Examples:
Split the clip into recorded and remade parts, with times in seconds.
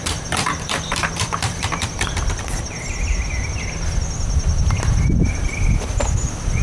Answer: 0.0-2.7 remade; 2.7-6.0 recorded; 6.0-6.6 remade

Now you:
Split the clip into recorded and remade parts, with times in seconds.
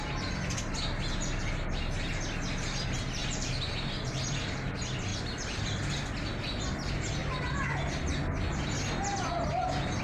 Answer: 0.0-3.2 recorded; 3.2-4.5 remade; 4.5-5.1 recorded; 5.1-5.6 remade; 5.6-10.0 recorded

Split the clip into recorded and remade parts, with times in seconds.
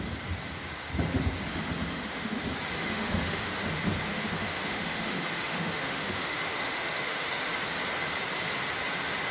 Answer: 0.0-1.5 recorded; 1.5-2.4 remade; 2.4-2.8 recorded; 2.8-3.5 remade; 3.5-4.1 recorded; 4.1-7.5 remade; 7.5-9.3 recorded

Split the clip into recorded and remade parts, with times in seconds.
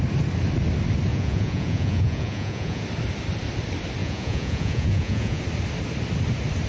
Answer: 0.0-1.1 recorded; 1.1-2.8 remade; 2.8-4.0 recorded; 4.0-5.4 remade; 5.4-6.7 recorded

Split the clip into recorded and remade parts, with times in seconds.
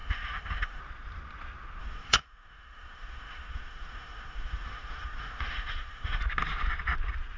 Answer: 0.0-0.8 remade; 0.8-1.8 recorded; 1.8-6.2 remade; 6.2-7.4 recorded